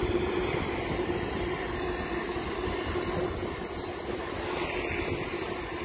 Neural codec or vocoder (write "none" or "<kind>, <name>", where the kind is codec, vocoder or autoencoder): none